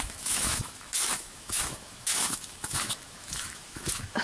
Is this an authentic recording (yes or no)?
no